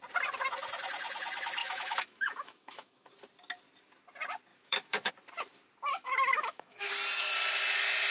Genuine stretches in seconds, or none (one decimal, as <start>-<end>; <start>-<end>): 0.0-1.6; 3.1-4.5; 5.1-5.9; 6.9-8.1